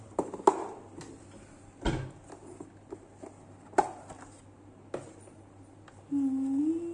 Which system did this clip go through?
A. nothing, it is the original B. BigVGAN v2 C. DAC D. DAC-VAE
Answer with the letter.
A